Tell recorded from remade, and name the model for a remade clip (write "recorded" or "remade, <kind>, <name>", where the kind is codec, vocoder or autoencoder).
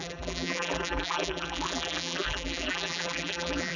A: remade, vocoder, BigVGAN v2